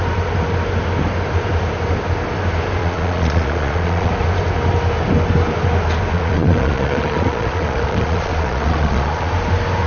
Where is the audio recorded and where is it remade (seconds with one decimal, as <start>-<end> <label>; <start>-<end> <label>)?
0.0-2.8 recorded; 2.8-4.1 remade; 4.1-6.1 recorded; 6.1-9.3 remade; 9.3-9.9 recorded